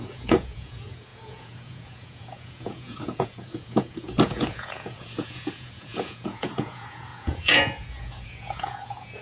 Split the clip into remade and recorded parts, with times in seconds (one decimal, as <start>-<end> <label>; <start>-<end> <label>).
0.0-9.2 remade